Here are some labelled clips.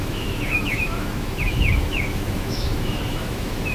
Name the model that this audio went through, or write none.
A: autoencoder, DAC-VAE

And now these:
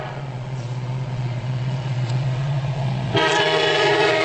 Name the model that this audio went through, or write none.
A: vocoder, Vocos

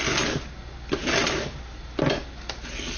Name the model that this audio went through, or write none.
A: none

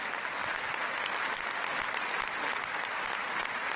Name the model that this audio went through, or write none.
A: none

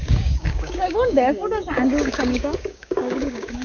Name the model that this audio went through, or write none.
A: codec, DAC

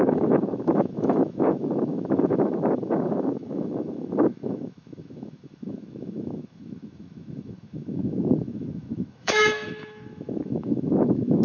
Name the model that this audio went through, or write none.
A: autoencoder, DAC-VAE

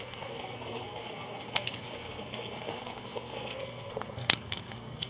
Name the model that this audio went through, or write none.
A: codec, SNAC